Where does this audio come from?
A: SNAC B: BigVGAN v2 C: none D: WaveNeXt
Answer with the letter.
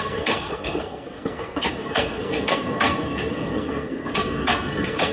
A